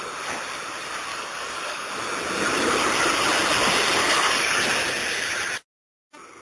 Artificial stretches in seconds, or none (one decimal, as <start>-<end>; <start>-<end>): 1.1-1.9; 4.0-4.5